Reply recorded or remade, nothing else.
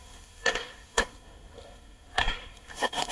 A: remade